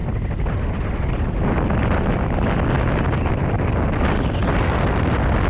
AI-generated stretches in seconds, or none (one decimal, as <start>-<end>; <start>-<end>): none